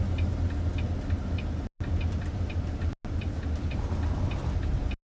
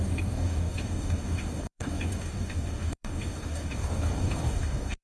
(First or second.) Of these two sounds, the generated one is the second